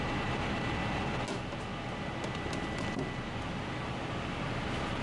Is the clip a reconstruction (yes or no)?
no